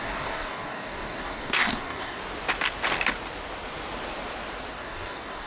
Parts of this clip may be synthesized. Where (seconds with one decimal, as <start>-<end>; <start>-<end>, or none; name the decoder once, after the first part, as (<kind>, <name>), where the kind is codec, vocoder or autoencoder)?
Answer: 0.0-2.2 (codec, DAC); 4.7-5.5